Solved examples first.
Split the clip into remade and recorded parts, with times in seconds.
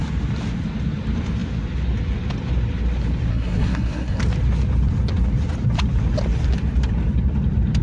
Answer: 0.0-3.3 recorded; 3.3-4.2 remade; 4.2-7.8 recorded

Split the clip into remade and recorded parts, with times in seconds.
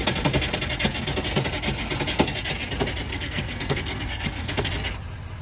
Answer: 0.0-3.1 recorded; 3.1-4.7 remade; 4.7-5.4 recorded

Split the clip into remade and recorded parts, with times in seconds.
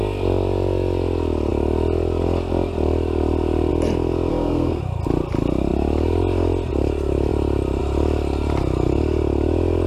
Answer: 0.0-4.3 recorded; 4.3-4.8 remade; 4.8-9.9 recorded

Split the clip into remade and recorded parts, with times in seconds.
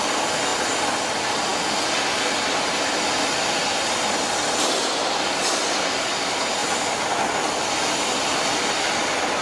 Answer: 0.0-9.4 recorded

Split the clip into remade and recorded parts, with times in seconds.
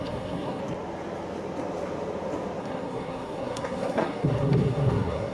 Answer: 0.0-0.6 remade; 0.6-2.6 recorded; 2.6-5.3 remade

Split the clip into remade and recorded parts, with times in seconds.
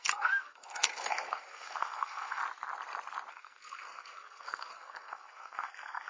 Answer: 0.0-2.4 remade; 2.4-3.3 recorded; 3.3-6.1 remade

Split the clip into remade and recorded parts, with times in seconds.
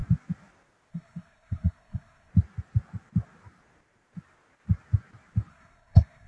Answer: 0.0-0.9 recorded; 0.9-2.3 remade; 2.3-5.5 recorded; 5.5-6.3 remade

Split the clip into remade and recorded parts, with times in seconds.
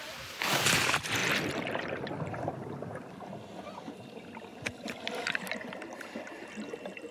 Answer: 0.0-7.1 recorded